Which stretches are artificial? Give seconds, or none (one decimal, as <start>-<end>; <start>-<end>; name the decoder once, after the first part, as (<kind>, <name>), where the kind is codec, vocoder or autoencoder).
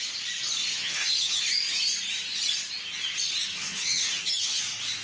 0.7-1.4 (vocoder, HiFi-GAN); 3.5-4.6